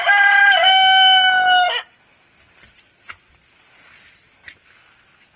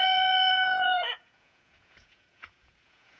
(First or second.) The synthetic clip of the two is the second